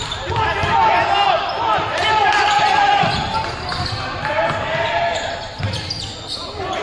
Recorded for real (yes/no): yes